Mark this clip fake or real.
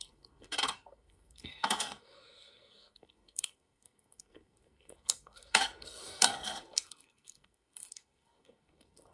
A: fake